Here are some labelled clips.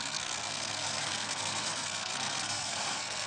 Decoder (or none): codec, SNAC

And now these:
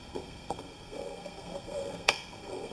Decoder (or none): codec, SNAC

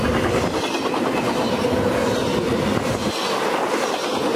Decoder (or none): none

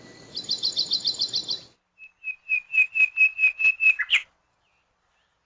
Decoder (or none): none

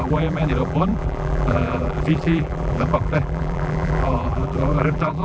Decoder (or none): vocoder, BigVGAN v2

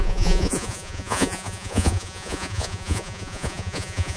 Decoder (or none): vocoder, Vocos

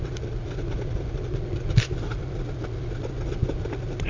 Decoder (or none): none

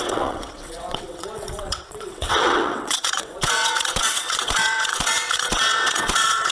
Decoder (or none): vocoder, WaveNeXt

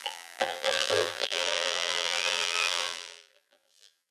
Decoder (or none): vocoder, BigVGAN v2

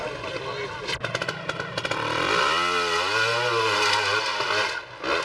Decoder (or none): none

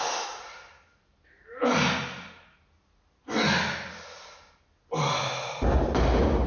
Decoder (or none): none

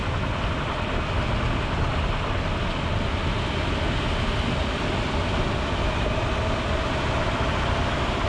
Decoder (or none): none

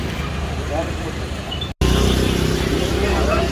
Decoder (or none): none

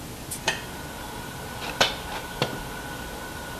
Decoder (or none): none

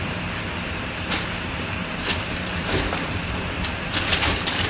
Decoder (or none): vocoder, BigVGAN v2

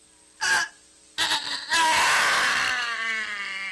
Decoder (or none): vocoder, BigVGAN v2